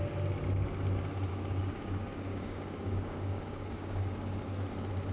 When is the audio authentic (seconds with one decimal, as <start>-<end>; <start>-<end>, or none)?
0.0-1.3; 4.4-5.1